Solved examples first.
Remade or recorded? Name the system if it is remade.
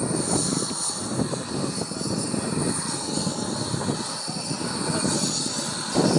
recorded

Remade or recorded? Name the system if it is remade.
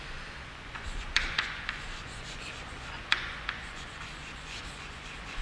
remade, vocoder, Vocos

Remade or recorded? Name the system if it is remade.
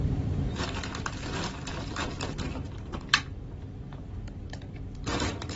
remade, vocoder, BigVGAN v2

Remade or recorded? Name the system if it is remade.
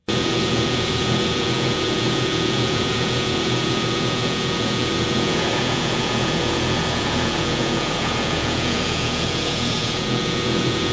remade, vocoder, Vocos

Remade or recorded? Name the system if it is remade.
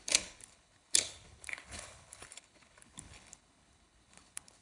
remade, codec, HILCodec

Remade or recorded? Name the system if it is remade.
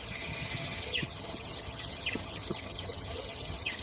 remade, vocoder, HiFi-GAN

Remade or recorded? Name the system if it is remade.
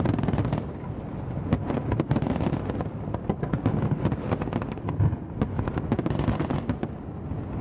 recorded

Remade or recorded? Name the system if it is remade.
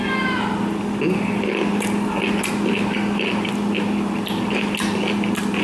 recorded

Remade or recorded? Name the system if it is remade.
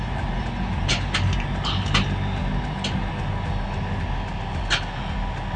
recorded